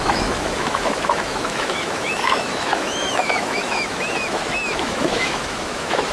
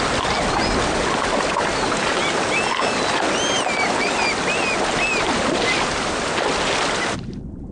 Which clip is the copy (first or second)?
first